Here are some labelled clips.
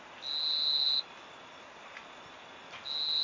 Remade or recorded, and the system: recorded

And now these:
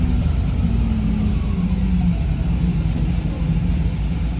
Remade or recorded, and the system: recorded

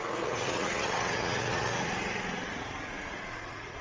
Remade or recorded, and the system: remade, vocoder, Vocos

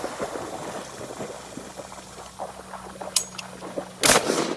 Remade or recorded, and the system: recorded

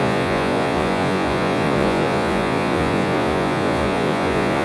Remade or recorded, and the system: remade, vocoder, Vocos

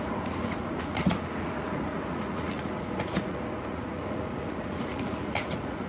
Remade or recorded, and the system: remade, vocoder, Vocos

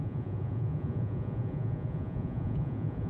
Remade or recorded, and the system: remade, vocoder, Vocos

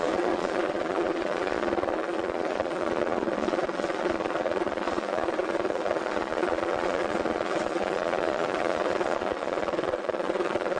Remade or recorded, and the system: remade, vocoder, Vocos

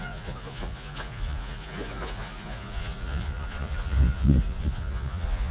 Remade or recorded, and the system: remade, vocoder, Vocos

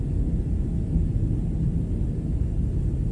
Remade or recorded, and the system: recorded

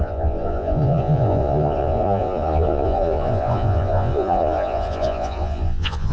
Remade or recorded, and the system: remade, vocoder, Vocos